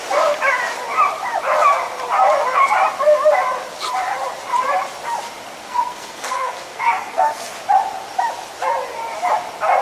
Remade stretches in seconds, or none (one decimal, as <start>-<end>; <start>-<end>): 5.6-7.5